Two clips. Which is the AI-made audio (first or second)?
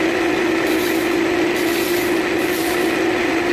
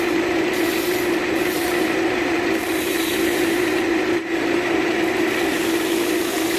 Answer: second